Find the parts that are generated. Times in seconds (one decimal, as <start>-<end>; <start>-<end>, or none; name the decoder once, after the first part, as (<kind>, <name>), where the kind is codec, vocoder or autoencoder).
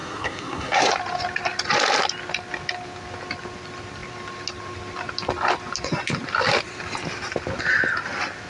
0.0-0.9 (codec, SNAC)